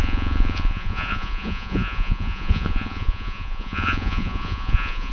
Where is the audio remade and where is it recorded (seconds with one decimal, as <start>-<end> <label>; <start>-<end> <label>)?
0.0-5.1 remade